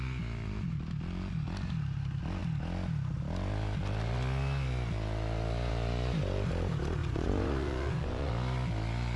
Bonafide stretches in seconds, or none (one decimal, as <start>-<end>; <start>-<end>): 0.0-7.0; 8.3-9.2

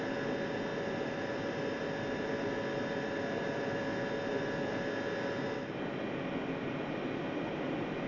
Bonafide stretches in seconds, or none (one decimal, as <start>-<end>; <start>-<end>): 0.0-8.1

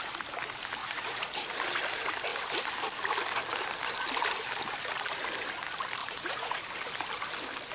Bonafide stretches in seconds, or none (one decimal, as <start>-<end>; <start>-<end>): 0.0-0.8; 1.5-6.0; 6.6-7.7

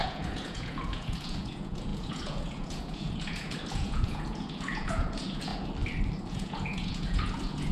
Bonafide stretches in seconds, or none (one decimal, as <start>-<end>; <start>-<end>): 5.5-6.3

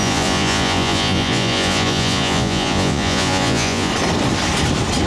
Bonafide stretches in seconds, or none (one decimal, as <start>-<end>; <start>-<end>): 3.9-5.1